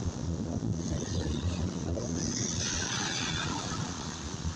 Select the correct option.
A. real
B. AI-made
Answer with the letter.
B